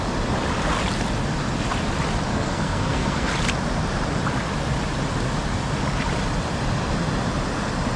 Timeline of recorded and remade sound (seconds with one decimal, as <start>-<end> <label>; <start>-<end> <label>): 0.0-2.3 recorded; 2.3-3.3 remade; 3.3-8.0 recorded